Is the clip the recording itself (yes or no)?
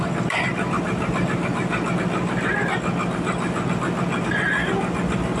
yes